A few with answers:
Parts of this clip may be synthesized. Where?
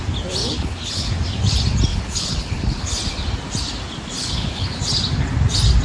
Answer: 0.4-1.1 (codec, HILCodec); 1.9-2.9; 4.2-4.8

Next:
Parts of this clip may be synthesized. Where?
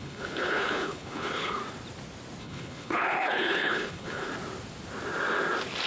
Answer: 0.0-1.6 (codec, HILCodec); 2.4-4.3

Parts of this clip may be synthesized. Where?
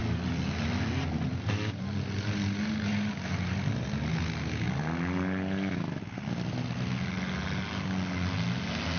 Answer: none